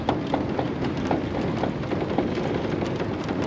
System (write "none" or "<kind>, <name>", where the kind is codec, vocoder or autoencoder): none